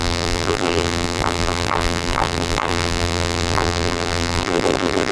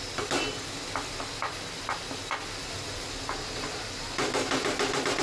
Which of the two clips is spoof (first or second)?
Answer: first